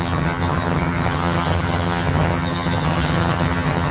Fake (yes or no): yes